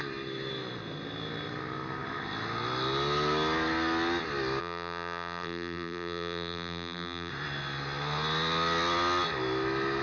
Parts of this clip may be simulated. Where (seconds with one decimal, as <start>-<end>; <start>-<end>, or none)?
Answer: 4.6-7.3